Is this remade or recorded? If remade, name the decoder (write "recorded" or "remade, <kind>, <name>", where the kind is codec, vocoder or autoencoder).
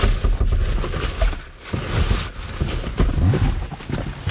recorded